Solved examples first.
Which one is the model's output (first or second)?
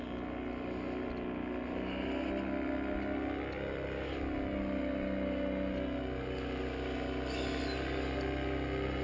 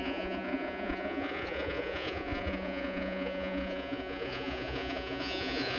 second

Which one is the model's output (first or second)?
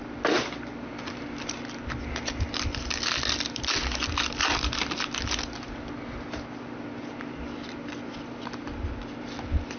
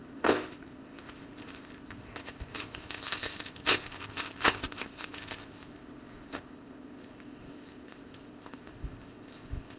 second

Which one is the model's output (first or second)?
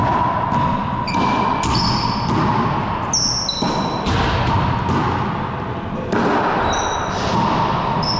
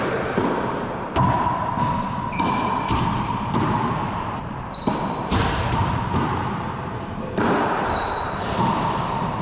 second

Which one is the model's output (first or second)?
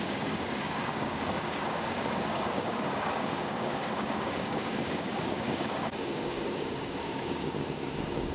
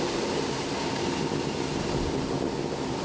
first